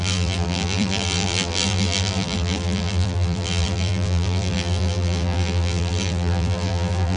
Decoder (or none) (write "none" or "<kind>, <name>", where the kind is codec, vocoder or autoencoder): vocoder, BigVGAN v2